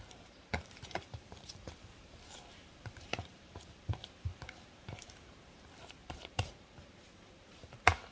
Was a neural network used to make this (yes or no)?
yes